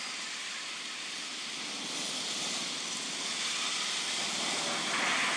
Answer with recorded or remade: recorded